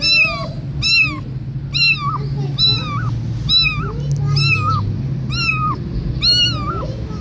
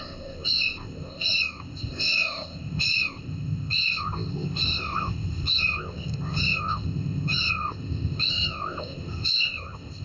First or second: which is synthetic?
second